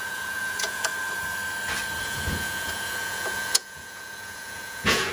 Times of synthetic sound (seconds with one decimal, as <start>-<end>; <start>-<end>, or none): 0.0-0.9; 2.0-5.1